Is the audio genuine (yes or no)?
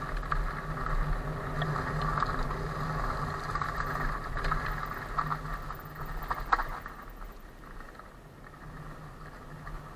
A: yes